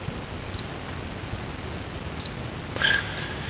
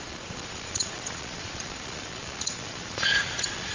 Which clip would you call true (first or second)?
first